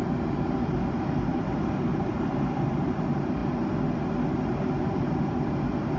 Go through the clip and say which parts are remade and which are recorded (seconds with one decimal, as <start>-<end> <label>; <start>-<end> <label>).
0.0-1.3 recorded; 1.3-3.0 remade; 3.0-6.0 recorded

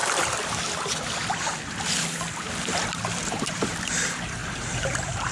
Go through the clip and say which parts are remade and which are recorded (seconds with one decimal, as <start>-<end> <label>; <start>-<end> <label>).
0.0-3.2 recorded; 3.2-5.3 remade

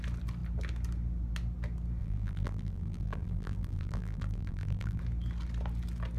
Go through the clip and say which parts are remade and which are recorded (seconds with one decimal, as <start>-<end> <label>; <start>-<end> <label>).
0.0-2.0 recorded; 2.0-5.0 remade; 5.0-6.2 recorded

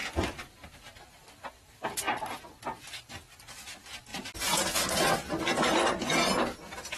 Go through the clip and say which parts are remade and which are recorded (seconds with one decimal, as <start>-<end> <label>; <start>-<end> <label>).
0.0-7.0 recorded

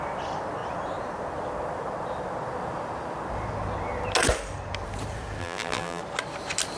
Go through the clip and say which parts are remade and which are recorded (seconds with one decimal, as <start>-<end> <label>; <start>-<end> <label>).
0.0-5.4 recorded; 5.4-6.0 remade; 6.0-6.8 recorded

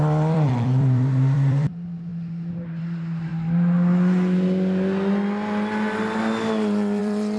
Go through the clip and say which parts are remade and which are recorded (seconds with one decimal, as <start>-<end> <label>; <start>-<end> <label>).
0.0-2.1 remade; 2.1-2.8 recorded; 2.8-3.3 remade; 3.3-7.0 recorded; 7.0-7.4 remade